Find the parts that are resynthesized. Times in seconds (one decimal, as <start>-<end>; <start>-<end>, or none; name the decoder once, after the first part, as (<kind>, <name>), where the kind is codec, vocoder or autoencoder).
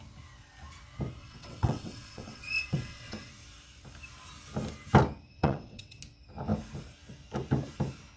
1.2-3.3 (vocoder, WaveNeXt); 5.3-6.0